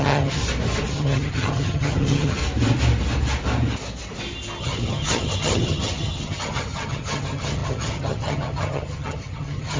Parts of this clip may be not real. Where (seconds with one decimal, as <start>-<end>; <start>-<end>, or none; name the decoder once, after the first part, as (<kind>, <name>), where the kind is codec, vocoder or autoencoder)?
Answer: 0.0-0.4 (vocoder, HiFi-GAN); 0.9-2.4; 4.6-9.8